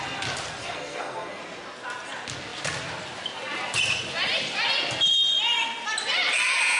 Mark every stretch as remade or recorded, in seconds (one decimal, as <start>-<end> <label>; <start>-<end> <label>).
0.0-0.6 recorded; 0.6-1.4 remade; 1.4-6.8 recorded